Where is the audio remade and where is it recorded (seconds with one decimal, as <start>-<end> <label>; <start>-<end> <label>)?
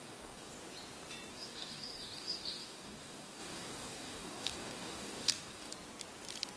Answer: 0.0-0.5 remade; 0.5-1.3 recorded; 1.3-5.7 remade; 5.7-6.6 recorded